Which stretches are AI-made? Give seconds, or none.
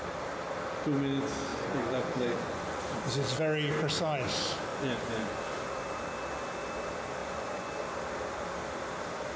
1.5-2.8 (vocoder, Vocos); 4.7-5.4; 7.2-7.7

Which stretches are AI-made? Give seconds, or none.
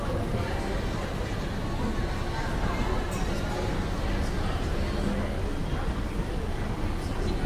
none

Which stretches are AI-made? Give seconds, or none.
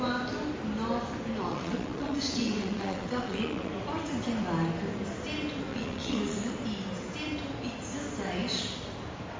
1.5-3.7 (vocoder, WaveNeXt); 5.7-6.5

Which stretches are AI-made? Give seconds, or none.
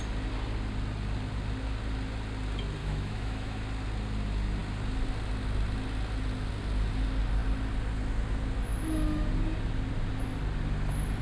2.8-3.6 (autoencoder, DAC-VAE)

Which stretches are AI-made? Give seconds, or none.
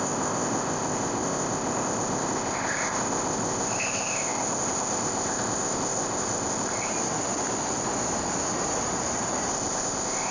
0.0-6.9 (codec, ZipCodec); 9.5-10.3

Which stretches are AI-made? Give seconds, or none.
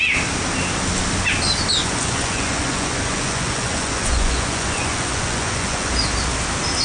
1.8-5.9 (vocoder, Vocos)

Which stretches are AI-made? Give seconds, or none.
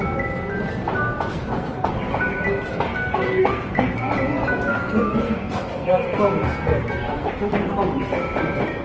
1.3-1.9 (codec, SNAC); 2.7-4.1; 4.7-7.6